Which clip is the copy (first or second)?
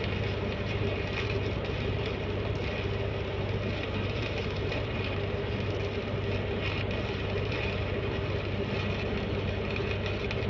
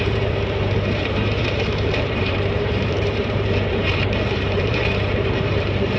second